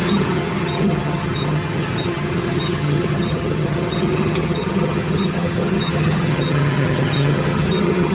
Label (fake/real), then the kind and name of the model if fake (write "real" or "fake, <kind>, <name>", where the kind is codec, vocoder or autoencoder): fake, vocoder, HiFi-GAN